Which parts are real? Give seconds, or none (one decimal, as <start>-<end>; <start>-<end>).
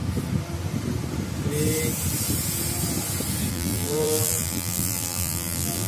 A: 0.0-3.5